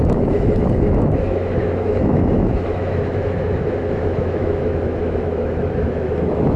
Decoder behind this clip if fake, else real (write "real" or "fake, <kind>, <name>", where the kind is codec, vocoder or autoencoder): fake, autoencoder, DAC-VAE